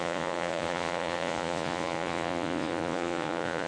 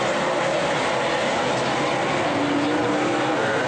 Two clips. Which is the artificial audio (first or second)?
first